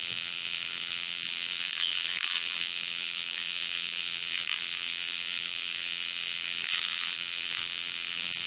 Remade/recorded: remade